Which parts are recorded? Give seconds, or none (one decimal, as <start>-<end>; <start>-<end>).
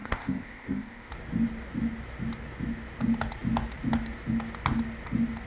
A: 1.1-5.5